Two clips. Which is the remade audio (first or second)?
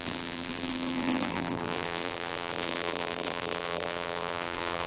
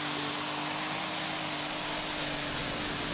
first